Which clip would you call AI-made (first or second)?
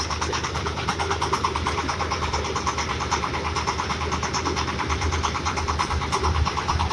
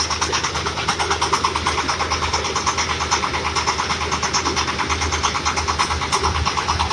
first